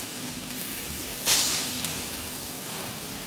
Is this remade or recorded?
remade